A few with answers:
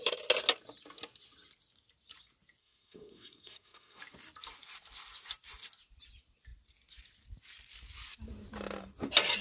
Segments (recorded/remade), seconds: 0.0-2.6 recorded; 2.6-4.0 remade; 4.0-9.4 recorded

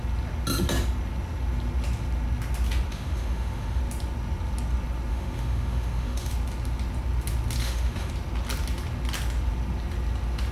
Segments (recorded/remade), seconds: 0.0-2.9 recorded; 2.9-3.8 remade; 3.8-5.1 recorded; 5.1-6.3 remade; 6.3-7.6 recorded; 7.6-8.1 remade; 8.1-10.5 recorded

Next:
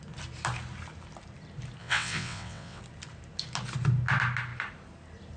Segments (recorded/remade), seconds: 0.0-1.8 recorded; 1.8-2.8 remade; 2.8-5.4 recorded

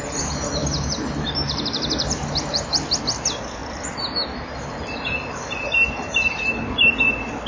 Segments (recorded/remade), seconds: 0.0-7.5 recorded

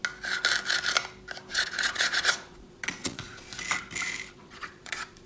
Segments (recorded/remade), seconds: 0.0-1.5 recorded; 1.5-3.5 remade; 3.5-4.3 recorded; 4.3-5.3 remade

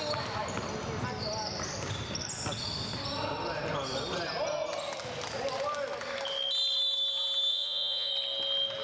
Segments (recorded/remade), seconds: 0.0-7.5 recorded; 7.5-8.1 remade; 8.1-8.8 recorded